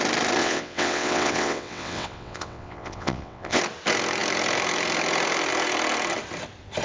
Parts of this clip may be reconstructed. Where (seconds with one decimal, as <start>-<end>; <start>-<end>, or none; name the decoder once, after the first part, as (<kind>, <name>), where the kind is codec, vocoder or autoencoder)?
0.4-3.6 (vocoder, WaveNeXt)